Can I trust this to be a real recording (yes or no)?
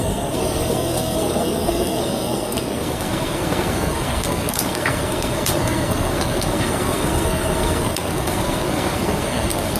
no